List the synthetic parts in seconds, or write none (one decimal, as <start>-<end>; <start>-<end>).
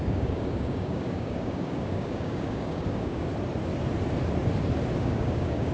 0.0-3.3; 5.0-5.7